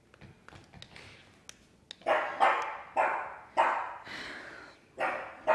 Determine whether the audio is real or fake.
real